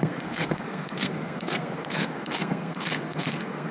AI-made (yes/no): yes